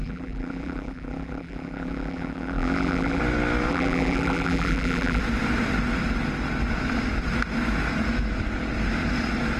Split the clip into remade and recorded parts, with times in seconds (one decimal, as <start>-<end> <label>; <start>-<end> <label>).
0.0-3.2 remade; 3.2-3.7 recorded; 3.7-5.2 remade; 5.2-9.6 recorded